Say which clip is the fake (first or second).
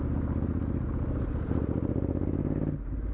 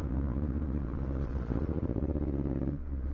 second